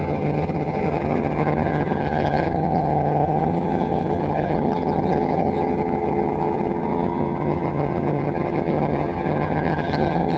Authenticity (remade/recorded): remade